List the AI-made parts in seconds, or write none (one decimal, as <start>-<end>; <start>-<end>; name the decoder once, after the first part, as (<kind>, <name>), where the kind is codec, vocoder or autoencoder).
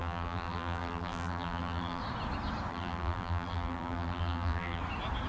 0.0-2.0 (vocoder, BigVGAN v2); 2.7-4.8